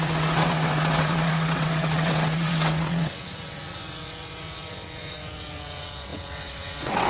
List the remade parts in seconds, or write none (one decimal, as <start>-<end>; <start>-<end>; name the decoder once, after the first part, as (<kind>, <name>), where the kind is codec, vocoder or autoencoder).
0.0-7.1 (vocoder, WaveNeXt)